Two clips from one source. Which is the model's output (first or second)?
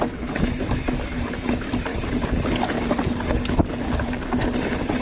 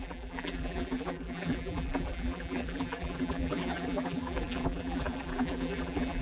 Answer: second